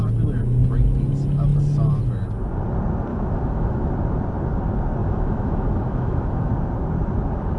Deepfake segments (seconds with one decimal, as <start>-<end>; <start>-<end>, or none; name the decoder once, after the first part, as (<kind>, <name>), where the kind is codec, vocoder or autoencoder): 3.1-3.9 (autoencoder, DAC-VAE); 5.0-6.5